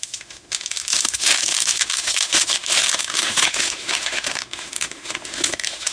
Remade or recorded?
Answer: remade